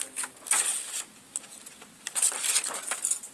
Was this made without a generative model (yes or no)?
yes